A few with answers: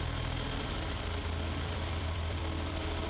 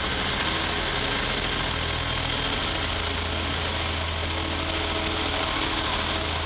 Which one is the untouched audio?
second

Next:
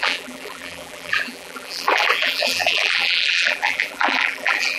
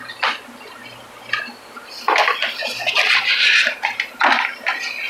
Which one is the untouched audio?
second